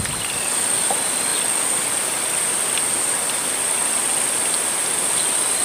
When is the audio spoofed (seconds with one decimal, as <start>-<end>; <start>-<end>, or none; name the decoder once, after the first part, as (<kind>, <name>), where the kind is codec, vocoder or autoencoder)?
none